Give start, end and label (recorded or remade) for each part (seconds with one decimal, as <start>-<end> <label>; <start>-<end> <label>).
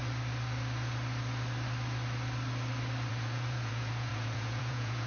0.0-3.1 recorded; 3.1-5.1 remade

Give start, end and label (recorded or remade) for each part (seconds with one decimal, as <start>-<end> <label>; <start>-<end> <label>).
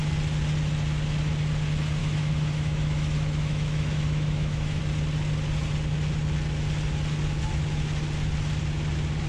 0.0-2.0 recorded; 2.0-4.8 remade; 4.8-9.3 recorded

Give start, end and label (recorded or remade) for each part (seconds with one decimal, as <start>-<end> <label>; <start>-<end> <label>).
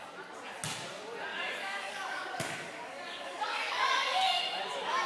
0.0-1.3 recorded; 1.3-4.4 remade; 4.4-5.1 recorded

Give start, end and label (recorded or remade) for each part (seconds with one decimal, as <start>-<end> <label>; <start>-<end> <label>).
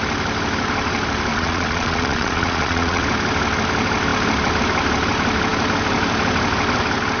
0.0-1.3 recorded; 1.3-3.0 remade; 3.0-7.2 recorded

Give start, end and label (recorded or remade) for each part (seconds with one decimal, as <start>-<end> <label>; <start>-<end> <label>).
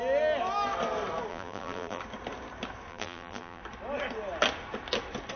0.0-1.3 recorded; 1.3-2.0 remade; 2.0-2.9 recorded; 2.9-3.6 remade; 3.6-5.4 recorded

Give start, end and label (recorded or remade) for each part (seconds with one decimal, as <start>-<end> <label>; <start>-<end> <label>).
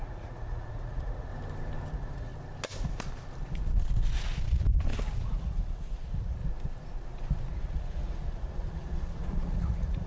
0.0-1.3 remade; 1.3-1.9 recorded; 1.9-2.3 remade; 2.3-5.2 recorded; 5.2-6.4 remade; 6.4-7.5 recorded; 7.5-10.1 remade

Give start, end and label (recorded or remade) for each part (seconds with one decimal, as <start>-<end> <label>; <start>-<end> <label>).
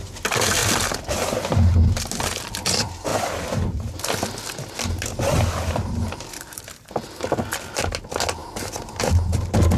0.0-0.6 recorded; 0.6-2.5 remade; 2.5-3.1 recorded; 3.1-6.9 remade; 6.9-9.8 recorded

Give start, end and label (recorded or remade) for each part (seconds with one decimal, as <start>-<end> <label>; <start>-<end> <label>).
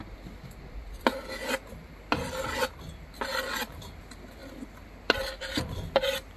0.0-6.4 recorded